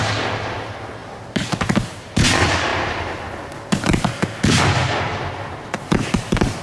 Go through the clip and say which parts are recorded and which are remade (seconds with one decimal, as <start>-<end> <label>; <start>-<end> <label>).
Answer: 0.0-1.0 recorded; 1.0-2.1 remade; 2.1-4.8 recorded; 4.8-5.4 remade; 5.4-6.6 recorded